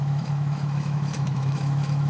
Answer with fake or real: fake